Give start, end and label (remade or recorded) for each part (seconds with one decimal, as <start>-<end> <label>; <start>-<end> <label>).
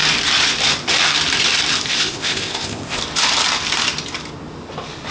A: 0.0-1.9 recorded; 1.9-3.0 remade; 3.0-5.1 recorded